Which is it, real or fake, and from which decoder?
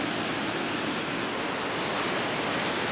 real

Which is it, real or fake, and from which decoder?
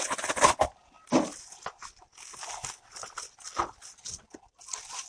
real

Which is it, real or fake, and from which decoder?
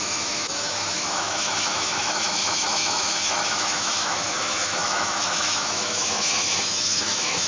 fake, autoencoder, DAC-VAE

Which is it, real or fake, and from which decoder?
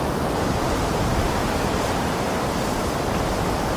real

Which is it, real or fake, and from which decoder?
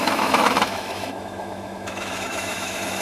fake, autoencoder, DAC-VAE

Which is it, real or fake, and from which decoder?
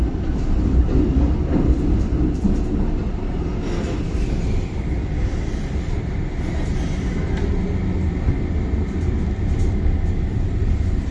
real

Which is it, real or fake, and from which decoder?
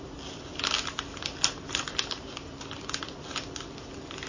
real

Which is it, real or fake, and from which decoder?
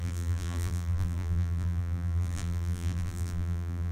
fake, vocoder, BigVGAN v2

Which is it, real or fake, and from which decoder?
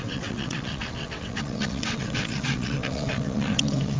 fake, vocoder, WaveNeXt